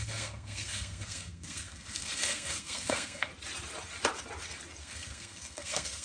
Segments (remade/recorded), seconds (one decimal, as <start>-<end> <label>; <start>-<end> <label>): 0.0-3.3 remade; 3.3-4.8 recorded; 4.8-6.0 remade